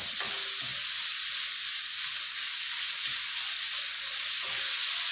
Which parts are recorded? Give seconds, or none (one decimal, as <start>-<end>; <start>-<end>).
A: 0.0-5.1